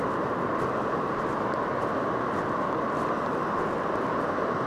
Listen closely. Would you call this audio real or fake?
real